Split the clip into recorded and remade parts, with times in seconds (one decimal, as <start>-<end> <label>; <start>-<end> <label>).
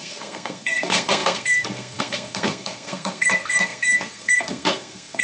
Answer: 0.0-5.2 remade